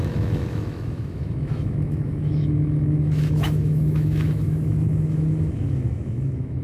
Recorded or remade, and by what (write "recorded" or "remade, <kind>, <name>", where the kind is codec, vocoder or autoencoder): remade, autoencoder, DAC-VAE